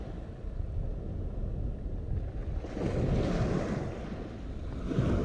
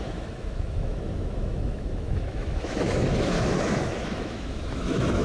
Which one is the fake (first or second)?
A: second